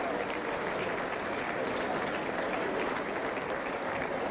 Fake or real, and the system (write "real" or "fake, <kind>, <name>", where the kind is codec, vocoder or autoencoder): real